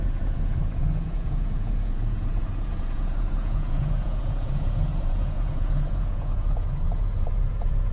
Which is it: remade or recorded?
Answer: remade